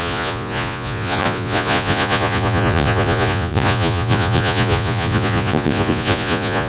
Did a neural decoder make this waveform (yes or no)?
yes